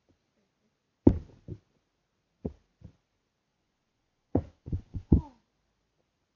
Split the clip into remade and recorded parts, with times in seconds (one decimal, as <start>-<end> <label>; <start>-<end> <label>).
0.0-3.5 recorded; 3.5-5.2 remade; 5.2-6.4 recorded